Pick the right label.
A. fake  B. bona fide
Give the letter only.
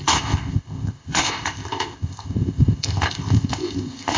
A